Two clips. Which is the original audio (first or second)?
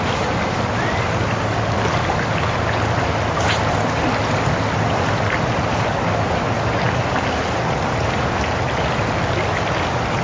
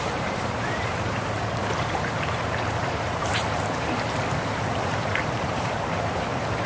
first